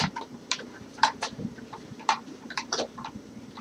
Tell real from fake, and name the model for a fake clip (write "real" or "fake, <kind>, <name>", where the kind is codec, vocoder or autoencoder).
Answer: fake, vocoder, BigVGAN v2